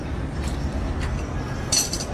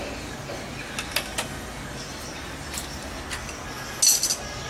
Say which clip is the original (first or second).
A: second